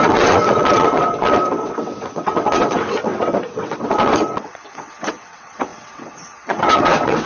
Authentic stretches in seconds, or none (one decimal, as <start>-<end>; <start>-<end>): none